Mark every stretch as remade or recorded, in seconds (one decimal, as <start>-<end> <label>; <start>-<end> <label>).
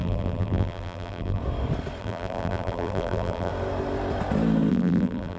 0.0-1.4 remade; 1.4-2.0 recorded; 2.0-3.5 remade; 3.5-4.7 recorded; 4.7-5.4 remade